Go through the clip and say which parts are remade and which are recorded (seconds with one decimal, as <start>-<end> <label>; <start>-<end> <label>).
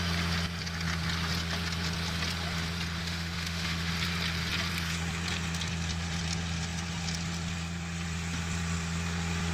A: 0.0-3.0 recorded; 3.0-3.9 remade; 3.9-9.5 recorded